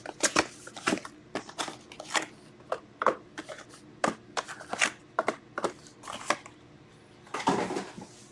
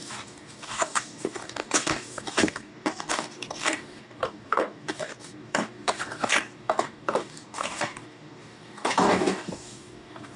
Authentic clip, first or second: first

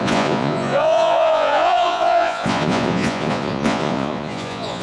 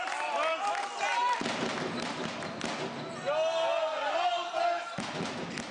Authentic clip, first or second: second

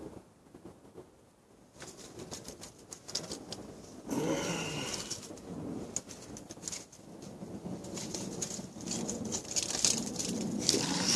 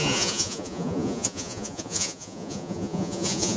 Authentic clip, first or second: first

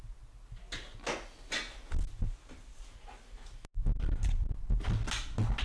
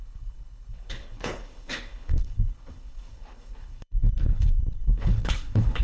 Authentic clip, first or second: first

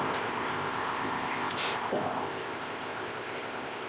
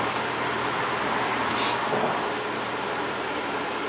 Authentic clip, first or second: second